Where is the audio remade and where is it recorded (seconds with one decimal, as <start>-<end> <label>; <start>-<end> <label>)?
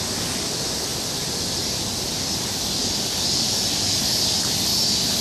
0.0-5.2 recorded